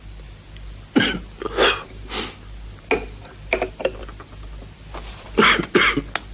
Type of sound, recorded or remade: recorded